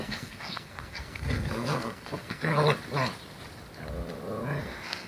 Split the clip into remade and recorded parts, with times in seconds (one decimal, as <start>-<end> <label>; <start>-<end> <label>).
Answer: 0.0-2.5 remade; 2.5-4.6 recorded; 4.6-5.1 remade